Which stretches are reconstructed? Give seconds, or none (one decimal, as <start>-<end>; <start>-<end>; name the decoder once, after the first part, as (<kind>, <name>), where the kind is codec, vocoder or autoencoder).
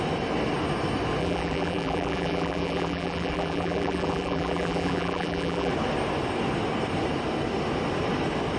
1.2-5.7 (vocoder, BigVGAN v2)